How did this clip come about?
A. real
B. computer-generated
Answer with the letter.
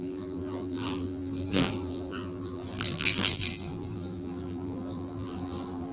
B